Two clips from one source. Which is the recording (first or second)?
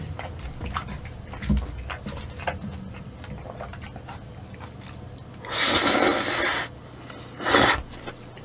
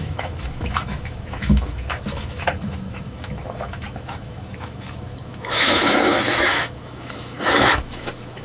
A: first